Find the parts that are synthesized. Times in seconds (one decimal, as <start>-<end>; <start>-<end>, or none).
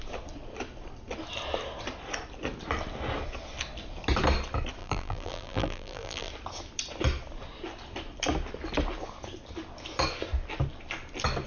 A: 4.8-6.3